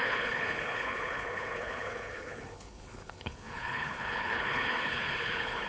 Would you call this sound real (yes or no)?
no